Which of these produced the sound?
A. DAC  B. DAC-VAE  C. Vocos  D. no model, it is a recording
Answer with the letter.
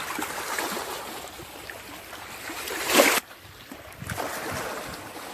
D